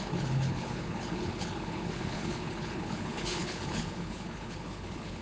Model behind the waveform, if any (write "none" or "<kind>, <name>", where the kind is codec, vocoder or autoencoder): codec, HILCodec